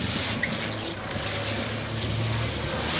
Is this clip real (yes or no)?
yes